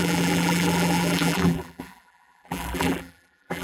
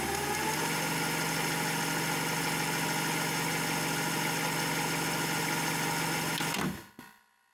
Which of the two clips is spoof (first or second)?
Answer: first